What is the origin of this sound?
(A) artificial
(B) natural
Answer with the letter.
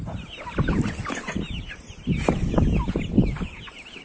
B